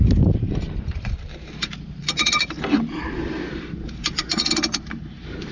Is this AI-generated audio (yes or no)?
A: yes